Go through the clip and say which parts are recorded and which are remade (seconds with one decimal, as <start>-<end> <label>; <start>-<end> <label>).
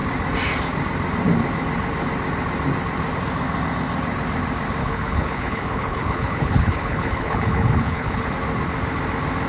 0.0-4.8 recorded; 4.8-8.3 remade; 8.3-9.5 recorded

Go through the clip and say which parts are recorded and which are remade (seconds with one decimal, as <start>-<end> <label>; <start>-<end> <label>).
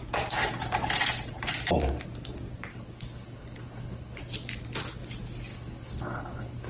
0.0-2.7 recorded; 2.7-4.2 remade; 4.2-5.5 recorded; 5.5-6.7 remade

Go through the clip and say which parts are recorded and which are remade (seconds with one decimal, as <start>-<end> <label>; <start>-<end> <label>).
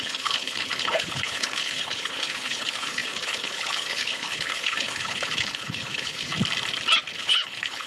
0.0-6.3 remade; 6.3-7.1 recorded; 7.1-7.9 remade